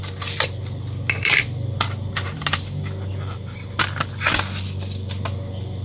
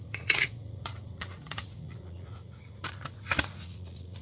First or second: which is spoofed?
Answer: second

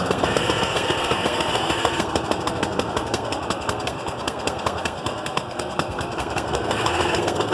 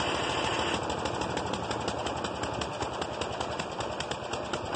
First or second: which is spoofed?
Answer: first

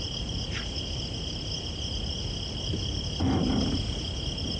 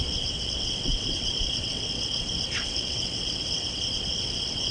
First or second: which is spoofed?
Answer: second